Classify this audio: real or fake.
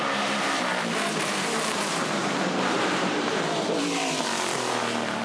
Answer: fake